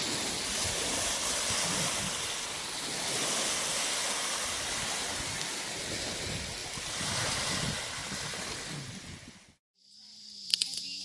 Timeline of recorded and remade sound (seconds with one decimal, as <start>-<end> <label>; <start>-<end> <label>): 0.0-6.6 recorded; 6.6-7.6 remade; 7.6-11.0 recorded